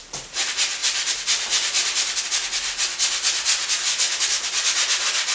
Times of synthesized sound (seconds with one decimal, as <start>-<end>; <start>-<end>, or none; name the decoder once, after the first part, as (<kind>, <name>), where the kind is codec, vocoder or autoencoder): 0.8-2.2 (vocoder, BigVGAN v2)